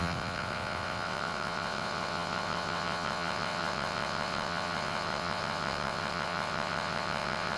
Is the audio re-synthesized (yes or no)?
yes